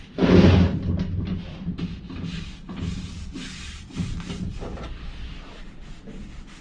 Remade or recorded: recorded